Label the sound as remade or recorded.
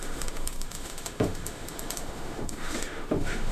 remade